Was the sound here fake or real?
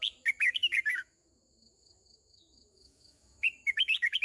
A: fake